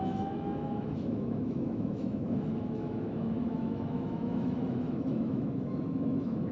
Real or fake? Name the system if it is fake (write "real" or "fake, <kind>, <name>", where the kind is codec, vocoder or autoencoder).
fake, autoencoder, DAC-VAE